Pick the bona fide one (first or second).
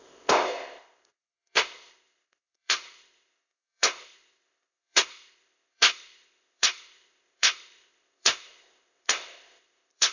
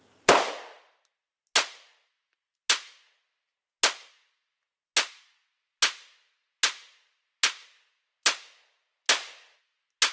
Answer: second